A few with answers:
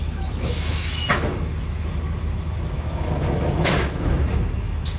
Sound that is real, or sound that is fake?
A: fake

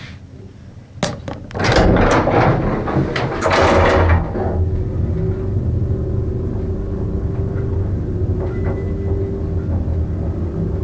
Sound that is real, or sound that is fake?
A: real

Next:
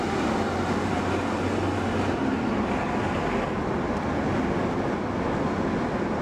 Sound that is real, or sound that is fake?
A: real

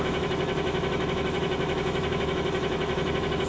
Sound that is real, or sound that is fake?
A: fake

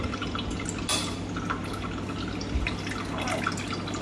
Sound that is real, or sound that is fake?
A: real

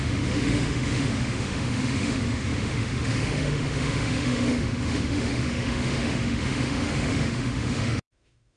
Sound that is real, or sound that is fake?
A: fake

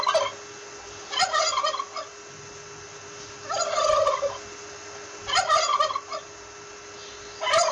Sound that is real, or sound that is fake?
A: real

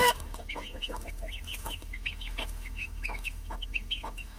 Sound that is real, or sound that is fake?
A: fake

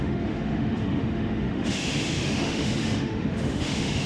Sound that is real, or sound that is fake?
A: fake